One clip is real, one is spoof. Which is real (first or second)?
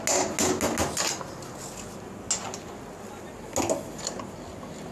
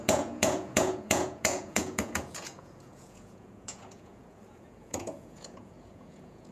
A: first